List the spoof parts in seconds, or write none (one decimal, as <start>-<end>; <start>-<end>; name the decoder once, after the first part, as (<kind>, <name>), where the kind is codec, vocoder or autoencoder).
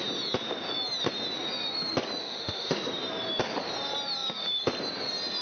2.2-2.9 (autoencoder, DAC-VAE)